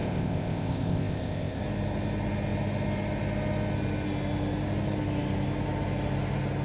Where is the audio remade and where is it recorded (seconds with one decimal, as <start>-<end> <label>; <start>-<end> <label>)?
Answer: 0.0-1.6 remade; 1.6-6.6 recorded